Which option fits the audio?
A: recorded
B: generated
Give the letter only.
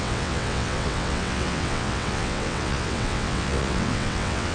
B